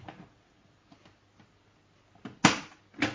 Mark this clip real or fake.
real